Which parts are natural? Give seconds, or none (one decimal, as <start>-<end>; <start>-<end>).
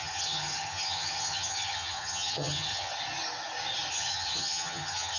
2.9-3.9